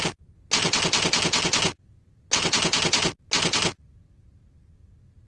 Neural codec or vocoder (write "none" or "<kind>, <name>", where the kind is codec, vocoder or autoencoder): none